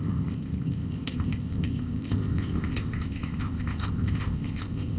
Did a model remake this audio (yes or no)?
yes